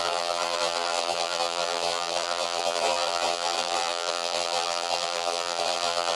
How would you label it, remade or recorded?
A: remade